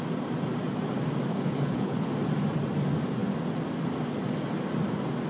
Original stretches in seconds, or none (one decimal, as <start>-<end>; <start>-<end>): 0.0-1.3; 2.1-5.3